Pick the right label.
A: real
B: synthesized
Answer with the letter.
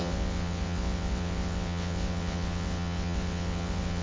B